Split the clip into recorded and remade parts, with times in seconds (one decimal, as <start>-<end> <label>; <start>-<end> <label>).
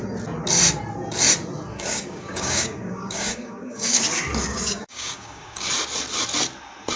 0.0-1.7 recorded; 1.7-4.0 remade; 4.0-4.5 recorded; 4.5-5.7 remade; 5.7-7.0 recorded